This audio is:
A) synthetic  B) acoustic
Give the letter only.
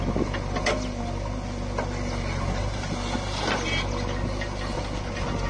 B